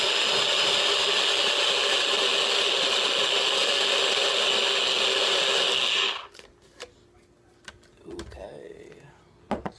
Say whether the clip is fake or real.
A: real